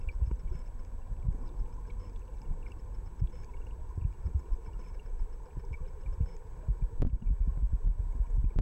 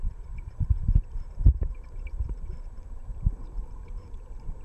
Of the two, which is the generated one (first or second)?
second